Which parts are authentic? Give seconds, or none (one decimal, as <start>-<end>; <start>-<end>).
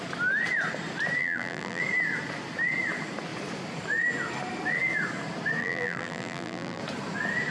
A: 0.0-1.2; 1.8-5.6; 6.8-7.5